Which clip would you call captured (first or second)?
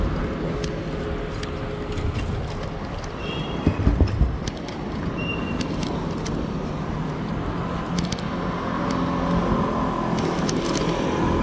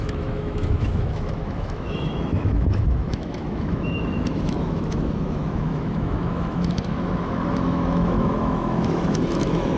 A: first